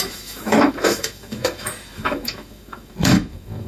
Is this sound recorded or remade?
remade